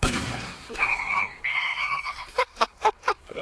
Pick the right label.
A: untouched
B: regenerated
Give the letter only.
B